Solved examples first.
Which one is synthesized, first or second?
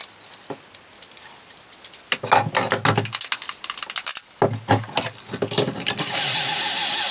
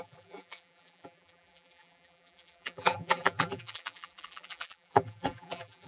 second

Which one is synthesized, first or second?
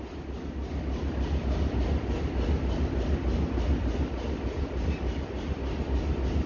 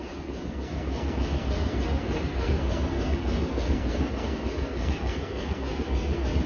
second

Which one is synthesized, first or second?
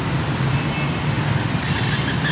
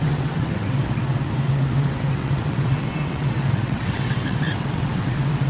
second